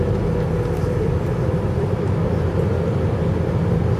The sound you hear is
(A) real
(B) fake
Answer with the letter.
A